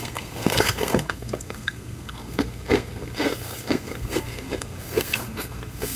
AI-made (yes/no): yes